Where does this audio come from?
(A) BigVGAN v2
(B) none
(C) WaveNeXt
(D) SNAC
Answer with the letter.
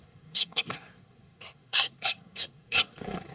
D